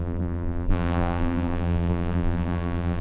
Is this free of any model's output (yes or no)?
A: no